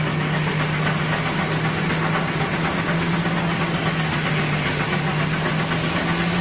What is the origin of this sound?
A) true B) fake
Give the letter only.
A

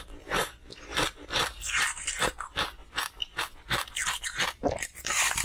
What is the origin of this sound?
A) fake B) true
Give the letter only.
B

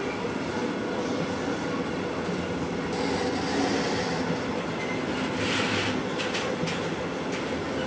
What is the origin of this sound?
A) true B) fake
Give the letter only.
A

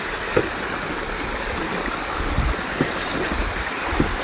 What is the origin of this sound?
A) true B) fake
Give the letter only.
A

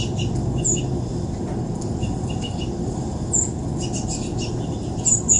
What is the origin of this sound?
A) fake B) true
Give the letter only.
B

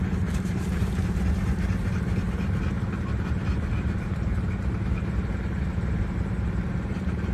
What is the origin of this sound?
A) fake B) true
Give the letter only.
A